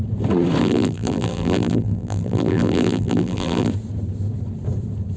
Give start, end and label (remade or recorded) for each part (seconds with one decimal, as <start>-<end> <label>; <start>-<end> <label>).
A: 0.0-0.6 recorded; 0.6-3.7 remade; 3.7-5.2 recorded